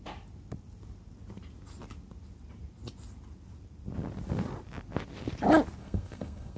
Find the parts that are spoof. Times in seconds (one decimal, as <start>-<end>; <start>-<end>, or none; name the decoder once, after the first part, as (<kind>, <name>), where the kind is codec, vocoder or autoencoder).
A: 5.8-6.6 (codec, SNAC)